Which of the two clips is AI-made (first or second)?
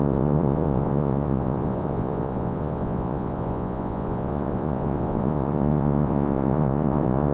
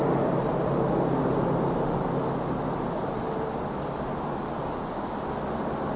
first